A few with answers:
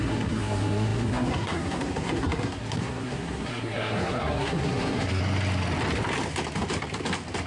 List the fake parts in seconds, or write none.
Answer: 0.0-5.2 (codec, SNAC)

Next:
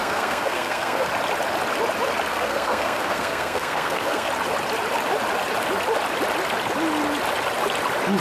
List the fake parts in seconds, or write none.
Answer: 0.0-1.1 (codec, SNAC); 2.3-4.3

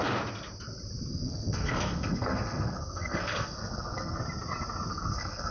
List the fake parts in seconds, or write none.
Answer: 1.1-4.2 (codec, SNAC); 4.9-5.5

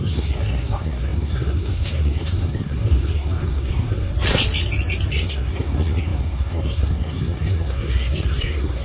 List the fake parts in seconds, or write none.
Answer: 0.0-4.1 (codec, SNAC); 5.1-8.8

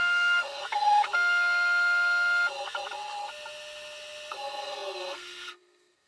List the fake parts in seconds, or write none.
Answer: 0.0-0.6 (codec, SNAC); 4.3-6.1

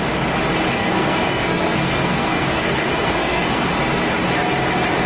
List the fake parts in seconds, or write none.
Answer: 0.7-3.8 (codec, SNAC)

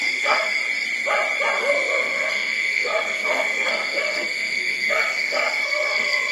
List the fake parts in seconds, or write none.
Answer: 0.0-0.6 (codec, SNAC); 1.6-6.3

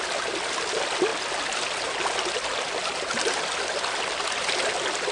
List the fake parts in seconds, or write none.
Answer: none